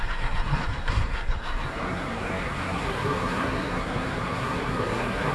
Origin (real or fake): fake